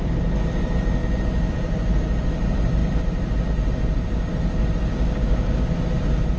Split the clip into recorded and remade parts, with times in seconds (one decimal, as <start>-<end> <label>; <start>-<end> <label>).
0.0-4.9 recorded; 4.9-5.6 remade; 5.6-6.4 recorded